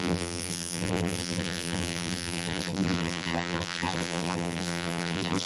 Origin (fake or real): fake